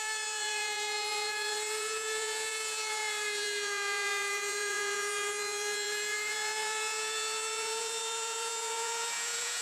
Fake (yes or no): yes